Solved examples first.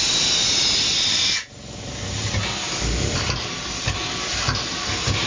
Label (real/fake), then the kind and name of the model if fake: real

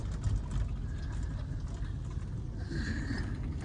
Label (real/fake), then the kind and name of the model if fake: real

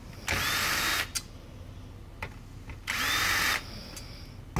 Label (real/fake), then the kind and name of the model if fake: real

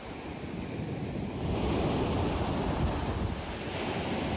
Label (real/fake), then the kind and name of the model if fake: real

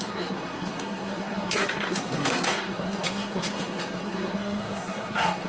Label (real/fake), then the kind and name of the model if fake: fake, codec, SNAC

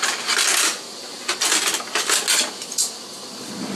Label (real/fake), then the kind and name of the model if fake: real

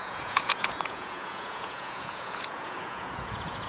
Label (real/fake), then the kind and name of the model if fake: fake, vocoder, Vocos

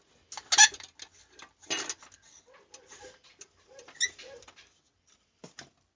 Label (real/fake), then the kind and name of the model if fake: real